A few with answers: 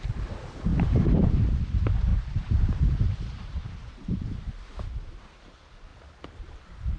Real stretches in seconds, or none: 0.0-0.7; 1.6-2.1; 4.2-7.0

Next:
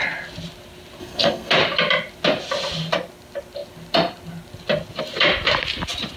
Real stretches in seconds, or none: 0.0-1.0; 1.5-6.2

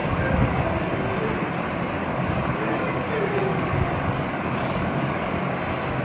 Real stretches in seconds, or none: 0.7-2.0; 3.1-3.5; 5.4-6.0

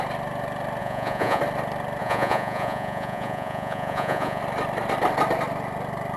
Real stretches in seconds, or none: 0.0-0.8; 1.4-2.0; 4.4-6.2

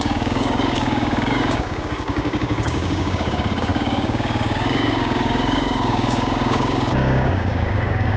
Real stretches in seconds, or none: none